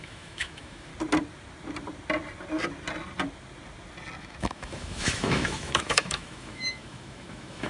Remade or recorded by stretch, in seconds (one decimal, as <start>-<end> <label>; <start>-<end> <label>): 0.0-0.9 remade; 0.9-4.2 recorded; 4.2-7.7 remade